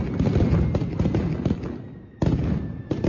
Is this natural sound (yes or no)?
yes